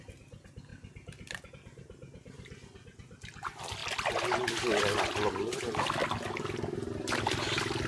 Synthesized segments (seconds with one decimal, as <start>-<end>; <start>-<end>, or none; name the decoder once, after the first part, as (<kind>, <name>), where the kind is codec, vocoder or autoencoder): 0.7-1.5 (vocoder, BigVGAN v2)